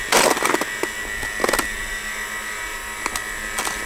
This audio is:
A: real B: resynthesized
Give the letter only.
A